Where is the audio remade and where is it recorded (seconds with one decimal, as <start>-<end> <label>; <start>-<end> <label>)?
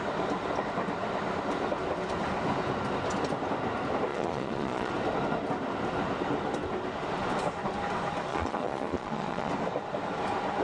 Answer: 0.0-4.1 recorded; 4.1-4.9 remade; 4.9-8.3 recorded; 8.3-9.5 remade; 9.5-10.6 recorded